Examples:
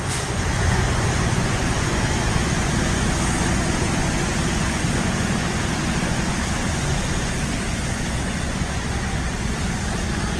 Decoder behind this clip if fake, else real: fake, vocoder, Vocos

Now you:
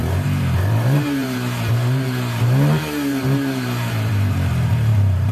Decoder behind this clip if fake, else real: fake, vocoder, BigVGAN v2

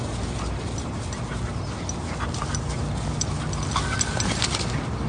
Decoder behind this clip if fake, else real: real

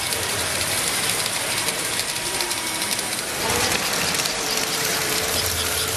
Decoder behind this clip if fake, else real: fake, vocoder, BigVGAN v2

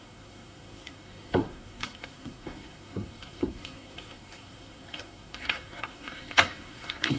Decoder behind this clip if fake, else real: fake, codec, SNAC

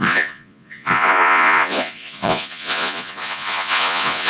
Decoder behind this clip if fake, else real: fake, vocoder, Vocos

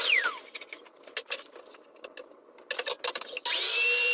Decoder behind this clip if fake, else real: real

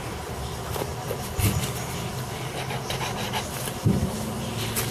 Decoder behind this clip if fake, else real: real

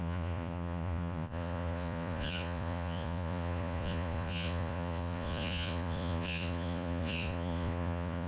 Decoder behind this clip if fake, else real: fake, vocoder, Vocos